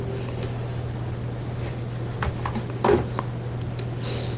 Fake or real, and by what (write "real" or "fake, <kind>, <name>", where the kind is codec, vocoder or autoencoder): real